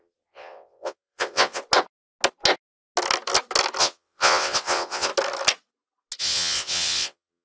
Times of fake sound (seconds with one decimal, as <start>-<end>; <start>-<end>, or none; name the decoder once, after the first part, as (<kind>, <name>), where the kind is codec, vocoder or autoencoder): 0.0-1.6 (vocoder, WaveNeXt); 3.8-5.1; 6.2-7.4